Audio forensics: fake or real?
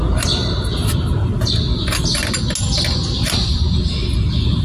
real